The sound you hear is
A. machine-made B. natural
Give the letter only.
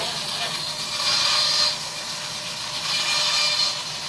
B